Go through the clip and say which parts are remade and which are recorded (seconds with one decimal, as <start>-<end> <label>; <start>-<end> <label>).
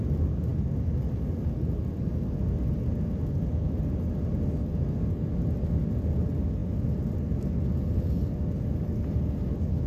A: 0.0-9.9 recorded